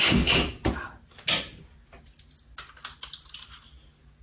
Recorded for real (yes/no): yes